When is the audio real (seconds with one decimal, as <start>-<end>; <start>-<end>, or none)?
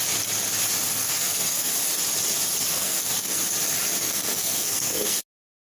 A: 0.0-1.0; 1.7-2.7; 3.4-4.0; 5.2-5.7